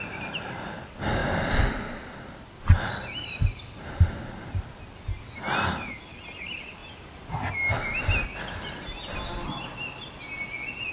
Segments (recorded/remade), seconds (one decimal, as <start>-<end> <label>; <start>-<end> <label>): 0.0-10.9 recorded